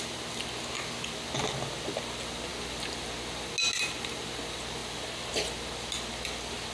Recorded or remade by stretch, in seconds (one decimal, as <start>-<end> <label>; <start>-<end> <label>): 0.0-6.7 recorded